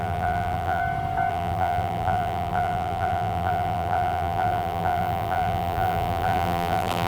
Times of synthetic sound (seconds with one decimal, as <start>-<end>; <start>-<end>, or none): 0.0-0.8; 1.3-7.1

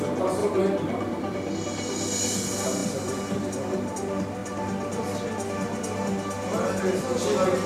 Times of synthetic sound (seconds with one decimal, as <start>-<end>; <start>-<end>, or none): 0.4-1.5

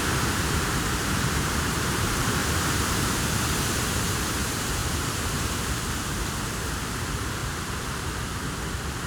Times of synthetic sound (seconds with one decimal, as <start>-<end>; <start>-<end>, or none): 0.0-9.1

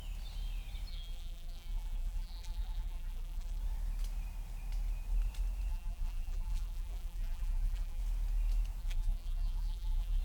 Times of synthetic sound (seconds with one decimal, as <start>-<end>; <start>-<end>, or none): 0.9-3.6; 5.7-8.0; 8.8-10.2